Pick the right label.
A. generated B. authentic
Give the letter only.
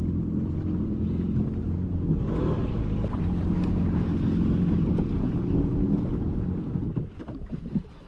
B